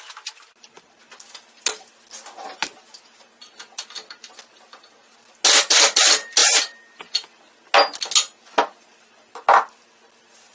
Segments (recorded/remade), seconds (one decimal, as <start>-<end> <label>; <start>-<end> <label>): 0.0-10.5 recorded